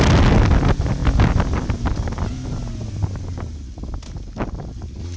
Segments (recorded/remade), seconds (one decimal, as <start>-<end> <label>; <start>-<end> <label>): 0.0-5.2 recorded